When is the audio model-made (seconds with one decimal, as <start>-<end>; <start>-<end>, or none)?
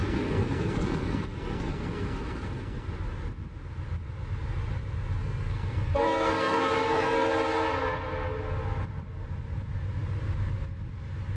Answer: 0.0-2.9; 5.2-7.3